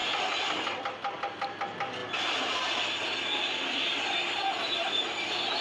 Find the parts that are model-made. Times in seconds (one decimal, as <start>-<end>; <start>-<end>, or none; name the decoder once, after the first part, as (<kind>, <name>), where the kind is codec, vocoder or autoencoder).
none

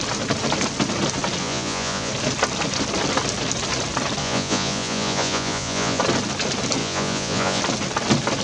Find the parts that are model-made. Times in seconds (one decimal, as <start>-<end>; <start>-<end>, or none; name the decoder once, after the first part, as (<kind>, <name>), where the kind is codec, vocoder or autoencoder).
1.4-2.1 (vocoder, Vocos); 4.2-6.0; 6.8-7.6

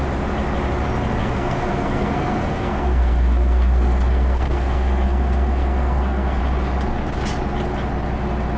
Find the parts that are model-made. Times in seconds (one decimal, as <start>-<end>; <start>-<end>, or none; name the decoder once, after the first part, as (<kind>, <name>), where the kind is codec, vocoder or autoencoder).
1.2-6.4 (codec, SNAC)

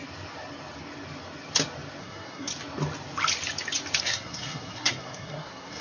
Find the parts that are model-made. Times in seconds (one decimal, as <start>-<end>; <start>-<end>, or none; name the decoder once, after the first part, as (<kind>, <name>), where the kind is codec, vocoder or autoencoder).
2.0-2.5 (codec, SNAC); 4.0-5.8